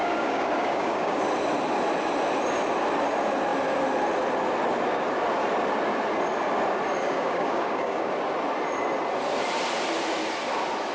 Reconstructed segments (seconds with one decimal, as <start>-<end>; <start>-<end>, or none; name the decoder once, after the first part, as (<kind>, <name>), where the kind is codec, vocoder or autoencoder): 0.0-1.2 (codec, DAC); 7.0-8.1

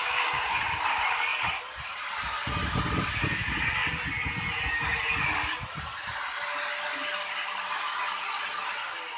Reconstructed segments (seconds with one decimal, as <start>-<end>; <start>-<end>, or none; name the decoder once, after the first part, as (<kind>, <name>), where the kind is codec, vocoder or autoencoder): 0.0-0.6 (codec, DAC)

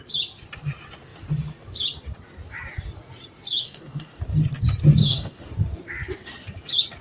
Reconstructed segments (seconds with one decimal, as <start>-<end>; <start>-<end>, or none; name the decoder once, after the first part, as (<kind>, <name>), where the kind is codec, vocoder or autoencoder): 3.6-4.2 (codec, DAC); 5.0-5.5